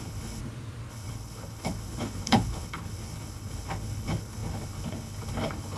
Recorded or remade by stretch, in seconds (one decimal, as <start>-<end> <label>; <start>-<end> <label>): 0.0-0.4 remade; 0.4-0.9 recorded; 0.9-5.8 remade